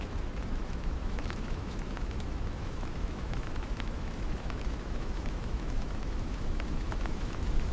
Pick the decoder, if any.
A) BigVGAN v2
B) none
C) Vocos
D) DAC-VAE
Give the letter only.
D